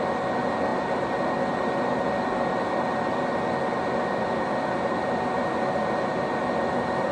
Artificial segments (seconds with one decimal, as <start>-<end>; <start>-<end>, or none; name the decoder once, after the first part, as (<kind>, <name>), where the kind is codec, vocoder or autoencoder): none